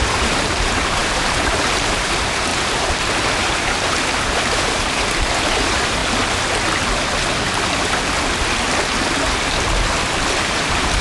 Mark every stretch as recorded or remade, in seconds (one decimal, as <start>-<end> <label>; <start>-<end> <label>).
0.0-2.5 remade; 2.5-3.0 recorded; 3.0-6.0 remade; 6.0-10.4 recorded; 10.4-11.0 remade